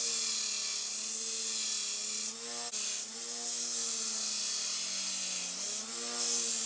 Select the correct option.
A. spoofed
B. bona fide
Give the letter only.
B